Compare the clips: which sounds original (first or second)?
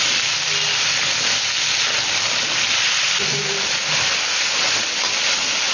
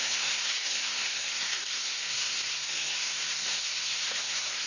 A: first